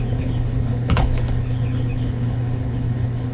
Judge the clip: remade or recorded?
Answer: remade